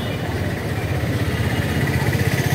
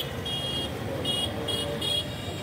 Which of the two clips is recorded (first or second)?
second